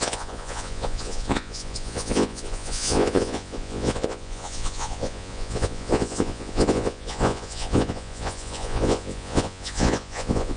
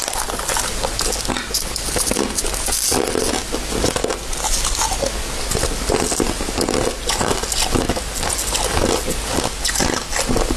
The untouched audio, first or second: second